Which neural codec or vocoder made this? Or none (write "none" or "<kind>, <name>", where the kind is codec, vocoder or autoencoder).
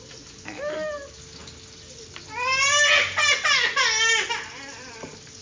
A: none